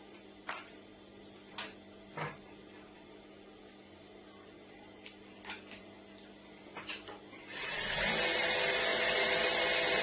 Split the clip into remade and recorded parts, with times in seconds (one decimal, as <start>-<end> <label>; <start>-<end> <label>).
0.0-10.0 recorded